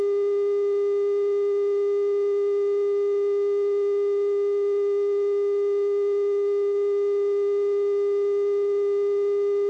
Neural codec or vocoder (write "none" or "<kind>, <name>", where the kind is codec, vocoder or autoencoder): none